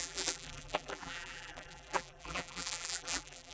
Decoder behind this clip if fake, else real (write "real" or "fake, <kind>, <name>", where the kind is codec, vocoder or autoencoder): fake, vocoder, BigVGAN v2